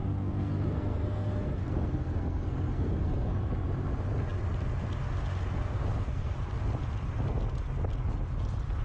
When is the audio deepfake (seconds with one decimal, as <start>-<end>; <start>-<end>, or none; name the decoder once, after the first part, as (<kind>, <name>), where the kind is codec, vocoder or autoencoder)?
0.0-3.4 (codec, SNAC); 5.8-6.4